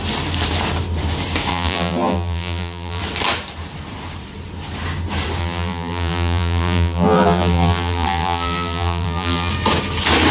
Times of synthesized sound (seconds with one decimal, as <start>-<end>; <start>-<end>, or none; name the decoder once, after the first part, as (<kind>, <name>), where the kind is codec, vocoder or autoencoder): 1.5-3.0 (vocoder, BigVGAN v2); 5.4-9.5